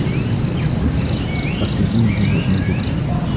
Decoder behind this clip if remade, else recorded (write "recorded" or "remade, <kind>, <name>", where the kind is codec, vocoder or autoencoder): recorded